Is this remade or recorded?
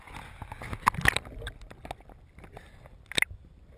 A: recorded